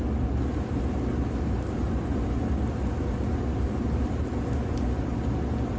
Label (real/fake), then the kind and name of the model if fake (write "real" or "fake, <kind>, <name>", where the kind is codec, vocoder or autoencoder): real